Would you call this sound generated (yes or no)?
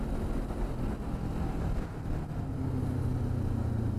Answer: no